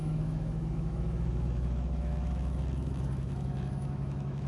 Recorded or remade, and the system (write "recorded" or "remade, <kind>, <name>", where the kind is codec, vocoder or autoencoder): remade, autoencoder, DAC-VAE